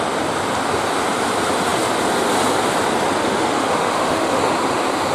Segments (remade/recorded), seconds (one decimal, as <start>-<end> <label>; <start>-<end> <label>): 0.0-3.2 recorded; 3.2-4.4 remade; 4.4-5.1 recorded